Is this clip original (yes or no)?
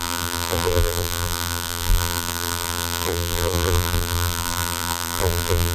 no